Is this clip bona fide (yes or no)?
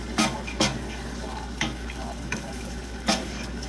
no